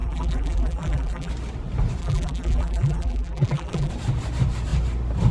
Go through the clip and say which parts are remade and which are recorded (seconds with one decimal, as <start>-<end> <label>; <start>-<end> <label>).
0.0-1.3 remade; 1.3-2.0 recorded; 2.0-3.9 remade; 3.9-5.3 recorded